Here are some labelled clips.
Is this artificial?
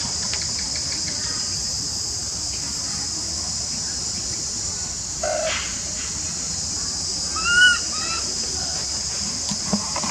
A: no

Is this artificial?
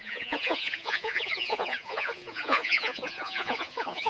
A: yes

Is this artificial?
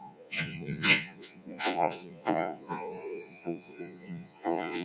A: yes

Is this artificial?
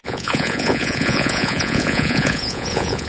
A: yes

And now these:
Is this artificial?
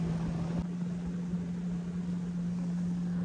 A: no